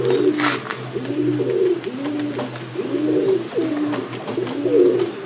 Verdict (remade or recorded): recorded